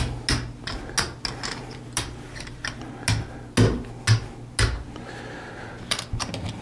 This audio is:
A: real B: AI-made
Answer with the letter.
A